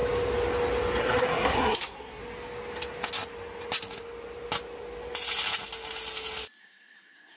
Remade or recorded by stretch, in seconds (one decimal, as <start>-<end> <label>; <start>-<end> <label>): 0.0-1.0 recorded; 1.0-2.2 remade; 2.2-6.6 recorded; 6.6-7.4 remade